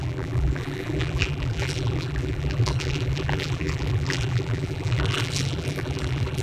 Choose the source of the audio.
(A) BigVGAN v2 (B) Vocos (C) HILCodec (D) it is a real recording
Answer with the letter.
A